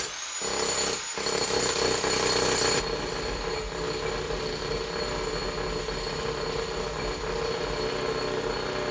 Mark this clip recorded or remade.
recorded